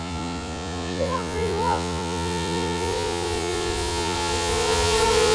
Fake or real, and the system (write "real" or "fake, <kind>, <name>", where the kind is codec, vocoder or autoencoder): fake, vocoder, Vocos